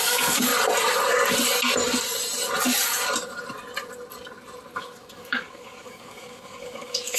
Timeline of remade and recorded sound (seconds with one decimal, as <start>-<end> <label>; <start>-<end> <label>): 0.0-0.5 remade; 0.5-4.7 recorded; 4.7-7.2 remade